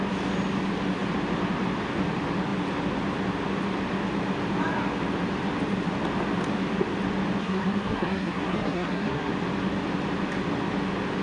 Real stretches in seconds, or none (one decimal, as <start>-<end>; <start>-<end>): 0.0-7.4; 9.3-11.2